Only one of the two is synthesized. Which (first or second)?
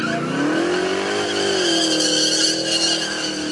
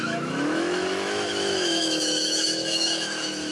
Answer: second